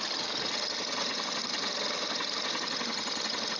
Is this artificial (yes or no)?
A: no